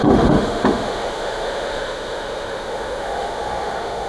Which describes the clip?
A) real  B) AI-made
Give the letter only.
B